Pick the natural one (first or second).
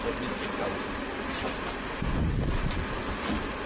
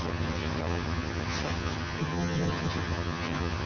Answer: first